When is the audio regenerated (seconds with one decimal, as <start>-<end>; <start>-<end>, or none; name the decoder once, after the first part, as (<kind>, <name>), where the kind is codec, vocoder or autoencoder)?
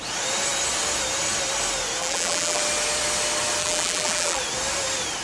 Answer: 2.0-2.6 (vocoder, BigVGAN v2); 3.6-4.4